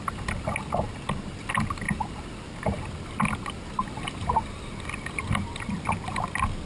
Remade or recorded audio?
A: recorded